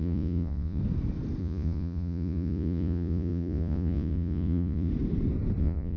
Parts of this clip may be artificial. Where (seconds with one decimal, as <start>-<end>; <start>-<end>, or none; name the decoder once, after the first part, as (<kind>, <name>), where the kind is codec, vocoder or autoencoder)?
0.0-0.8 (vocoder, Vocos); 1.4-4.9; 5.6-6.0